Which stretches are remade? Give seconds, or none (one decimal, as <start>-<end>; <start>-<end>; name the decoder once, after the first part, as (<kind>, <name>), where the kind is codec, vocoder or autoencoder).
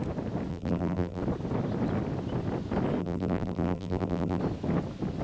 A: 0.5-1.2 (vocoder, BigVGAN v2); 3.0-4.4